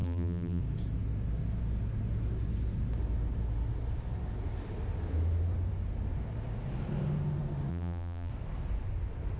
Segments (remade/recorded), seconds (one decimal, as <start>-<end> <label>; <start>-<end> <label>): 0.0-0.6 remade; 0.6-7.7 recorded; 7.7-8.3 remade; 8.3-9.4 recorded